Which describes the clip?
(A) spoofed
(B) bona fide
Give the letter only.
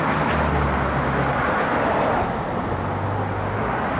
B